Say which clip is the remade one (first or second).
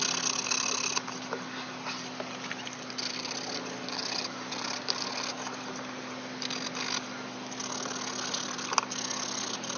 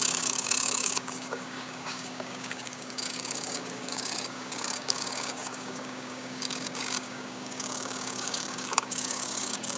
second